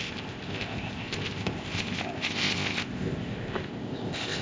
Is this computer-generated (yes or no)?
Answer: yes